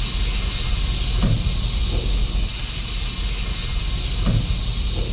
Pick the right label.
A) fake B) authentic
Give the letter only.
B